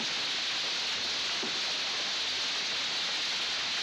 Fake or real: real